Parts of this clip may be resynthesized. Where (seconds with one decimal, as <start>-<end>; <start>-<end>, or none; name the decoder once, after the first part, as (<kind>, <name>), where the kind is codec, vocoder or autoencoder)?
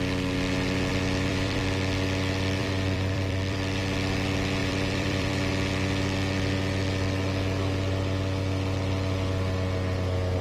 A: 0.9-1.6 (vocoder, BigVGAN v2); 2.6-3.8; 4.6-5.5